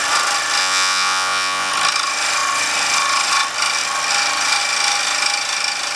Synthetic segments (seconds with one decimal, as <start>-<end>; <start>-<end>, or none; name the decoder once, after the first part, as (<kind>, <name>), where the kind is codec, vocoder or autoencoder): 0.6-1.7 (vocoder, Vocos)